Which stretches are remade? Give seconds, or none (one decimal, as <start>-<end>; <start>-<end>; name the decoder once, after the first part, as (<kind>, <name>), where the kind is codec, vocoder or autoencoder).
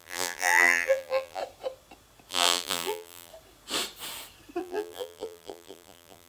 0.0-1.4 (vocoder, BigVGAN v2); 2.3-3.3; 4.6-6.3